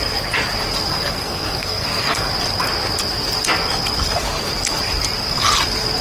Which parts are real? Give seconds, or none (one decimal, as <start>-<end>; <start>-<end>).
0.0-0.9; 2.3-6.0